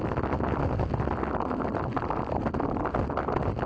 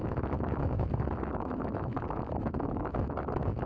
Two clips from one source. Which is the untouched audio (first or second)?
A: first